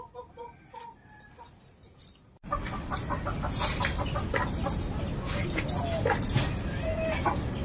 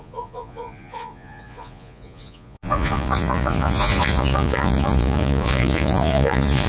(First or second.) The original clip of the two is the first